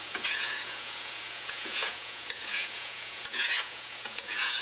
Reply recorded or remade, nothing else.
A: remade